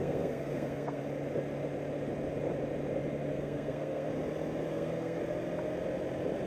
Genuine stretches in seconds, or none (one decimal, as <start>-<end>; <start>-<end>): 1.0-3.3; 4.1-4.7; 5.2-6.5

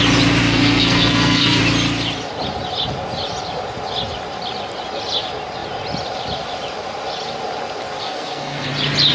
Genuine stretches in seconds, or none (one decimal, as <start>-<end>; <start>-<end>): 0.0-0.4; 1.6-8.0; 8.7-9.1

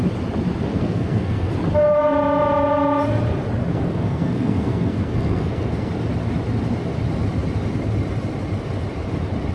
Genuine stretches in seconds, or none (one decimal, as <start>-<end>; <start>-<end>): 0.0-0.7; 1.5-3.7; 5.9-9.5